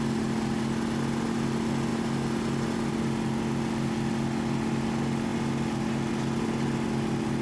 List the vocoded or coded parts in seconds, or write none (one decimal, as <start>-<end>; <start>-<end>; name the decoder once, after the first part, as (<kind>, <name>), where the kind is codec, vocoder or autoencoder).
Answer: none